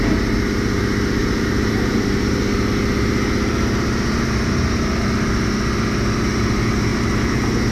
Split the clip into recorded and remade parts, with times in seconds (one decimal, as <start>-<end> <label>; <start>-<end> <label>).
0.0-1.2 recorded; 1.2-2.7 remade; 2.7-7.7 recorded